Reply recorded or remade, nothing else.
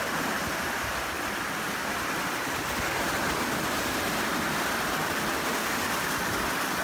recorded